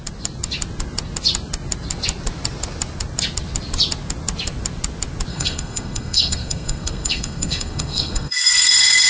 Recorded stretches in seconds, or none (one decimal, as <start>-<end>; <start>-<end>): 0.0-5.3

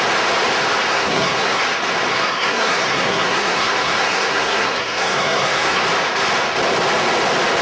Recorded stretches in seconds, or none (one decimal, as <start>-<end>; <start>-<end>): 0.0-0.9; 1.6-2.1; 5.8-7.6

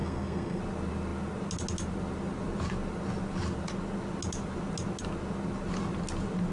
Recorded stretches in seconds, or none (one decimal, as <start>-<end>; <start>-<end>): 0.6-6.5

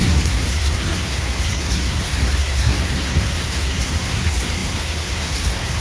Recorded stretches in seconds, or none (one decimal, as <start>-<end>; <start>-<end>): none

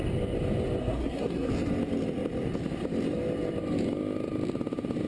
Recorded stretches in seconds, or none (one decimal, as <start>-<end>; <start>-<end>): 0.0-0.8; 1.5-5.1

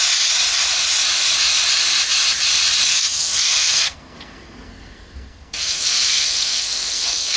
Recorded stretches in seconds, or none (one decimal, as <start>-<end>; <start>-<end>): 0.0-2.9